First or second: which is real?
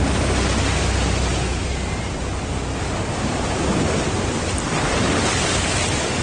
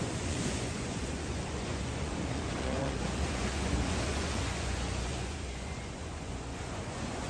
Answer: first